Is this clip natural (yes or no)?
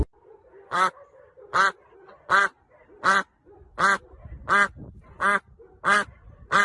yes